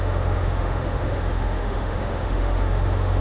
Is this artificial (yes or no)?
yes